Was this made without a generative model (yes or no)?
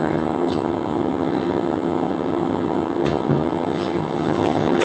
no